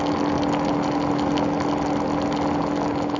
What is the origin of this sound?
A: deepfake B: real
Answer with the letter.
B